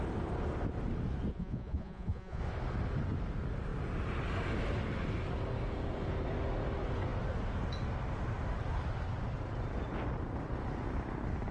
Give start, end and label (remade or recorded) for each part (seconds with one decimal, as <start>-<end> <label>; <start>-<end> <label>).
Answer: 0.0-1.3 recorded; 1.3-2.4 remade; 2.4-11.5 recorded